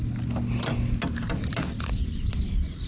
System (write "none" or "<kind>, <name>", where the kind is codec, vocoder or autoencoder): none